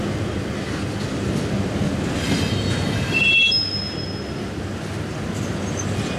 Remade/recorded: recorded